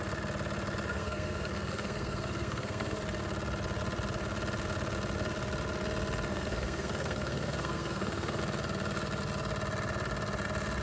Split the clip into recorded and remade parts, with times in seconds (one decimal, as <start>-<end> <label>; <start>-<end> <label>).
0.0-0.9 recorded; 0.9-3.0 remade; 3.0-6.3 recorded; 6.3-8.4 remade; 8.4-10.8 recorded